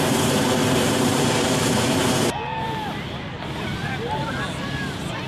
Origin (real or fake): real